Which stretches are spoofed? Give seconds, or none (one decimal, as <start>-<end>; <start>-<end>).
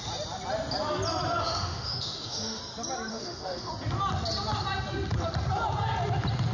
1.4-2.6; 3.1-3.7